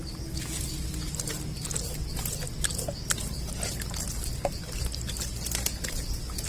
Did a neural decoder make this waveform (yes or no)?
no